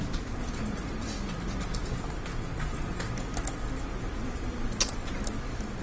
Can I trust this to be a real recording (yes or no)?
yes